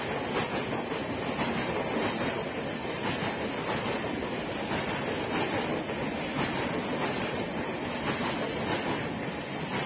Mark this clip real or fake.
real